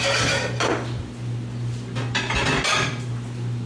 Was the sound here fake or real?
real